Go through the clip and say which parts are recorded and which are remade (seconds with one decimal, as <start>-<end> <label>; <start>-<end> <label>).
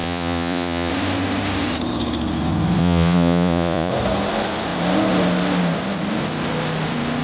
0.0-0.9 remade; 0.9-2.8 recorded; 2.8-3.9 remade; 3.9-7.2 recorded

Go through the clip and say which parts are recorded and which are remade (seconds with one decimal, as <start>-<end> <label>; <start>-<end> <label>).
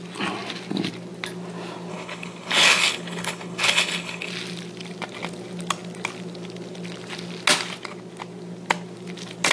0.0-1.9 recorded; 1.9-4.3 remade; 4.3-9.5 recorded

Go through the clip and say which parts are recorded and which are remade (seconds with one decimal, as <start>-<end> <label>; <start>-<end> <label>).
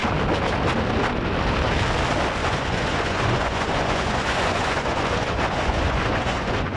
0.0-2.4 recorded; 2.4-6.8 remade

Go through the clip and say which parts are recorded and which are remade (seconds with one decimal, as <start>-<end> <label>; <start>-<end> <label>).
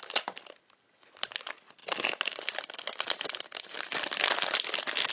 0.0-5.1 recorded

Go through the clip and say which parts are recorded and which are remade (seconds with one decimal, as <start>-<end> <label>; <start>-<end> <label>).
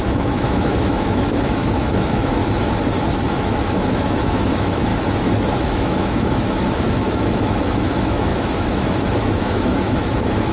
0.0-2.4 remade; 2.4-3.3 recorded; 3.3-4.9 remade; 4.9-5.6 recorded; 5.6-10.5 remade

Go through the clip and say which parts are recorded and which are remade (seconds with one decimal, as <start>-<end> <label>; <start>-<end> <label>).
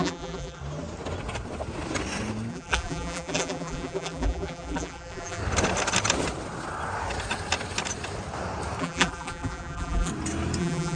0.0-0.6 remade; 0.6-2.5 recorded; 2.5-5.4 remade; 5.4-8.8 recorded; 8.8-10.1 remade; 10.1-10.6 recorded; 10.6-11.0 remade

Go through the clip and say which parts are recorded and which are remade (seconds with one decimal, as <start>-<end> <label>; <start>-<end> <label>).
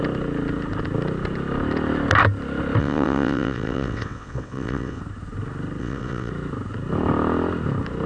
0.0-2.8 recorded; 2.8-5.0 remade; 5.0-5.8 recorded; 5.8-6.3 remade; 6.3-8.1 recorded